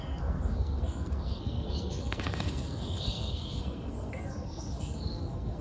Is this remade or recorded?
remade